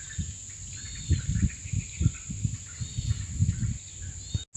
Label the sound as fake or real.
real